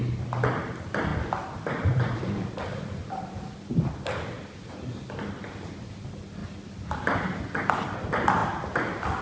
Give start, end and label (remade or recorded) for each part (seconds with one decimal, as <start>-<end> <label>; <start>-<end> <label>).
0.0-1.1 recorded; 1.1-4.7 remade; 4.7-9.2 recorded